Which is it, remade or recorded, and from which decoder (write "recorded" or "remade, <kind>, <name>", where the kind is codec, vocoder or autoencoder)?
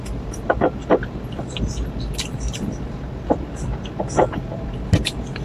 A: remade, vocoder, BigVGAN v2